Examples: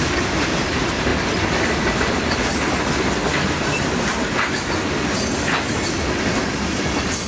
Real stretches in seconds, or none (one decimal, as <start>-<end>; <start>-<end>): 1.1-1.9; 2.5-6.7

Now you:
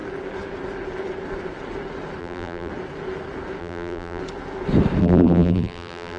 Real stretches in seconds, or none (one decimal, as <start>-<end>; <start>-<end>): 0.0-2.2; 2.7-3.6; 4.2-5.0

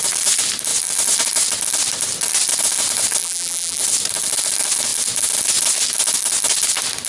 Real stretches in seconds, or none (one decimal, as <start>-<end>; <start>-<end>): 0.0-3.2; 3.8-7.1

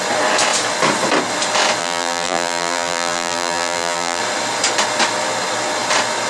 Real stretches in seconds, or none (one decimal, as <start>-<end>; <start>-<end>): 0.0-1.8; 4.2-6.3

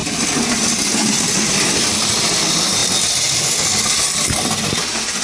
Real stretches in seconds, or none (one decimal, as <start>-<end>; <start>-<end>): 0.0-0.9; 2.8-3.8

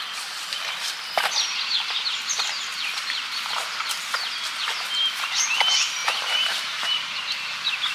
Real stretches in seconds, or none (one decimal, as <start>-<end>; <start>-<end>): 0.0-2.7; 3.3-6.0; 7.2-7.9

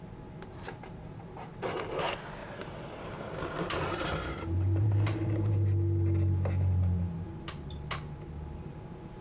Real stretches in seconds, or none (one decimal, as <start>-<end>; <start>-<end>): 0.0-0.5; 1.6-2.4; 5.6-9.2